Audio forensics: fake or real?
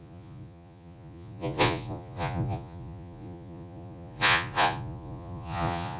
fake